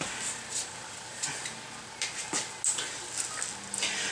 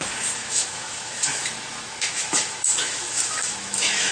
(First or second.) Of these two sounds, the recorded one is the first